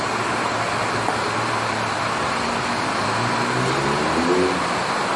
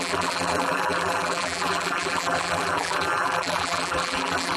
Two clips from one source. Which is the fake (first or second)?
second